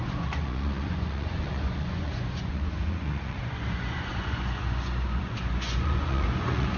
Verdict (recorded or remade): remade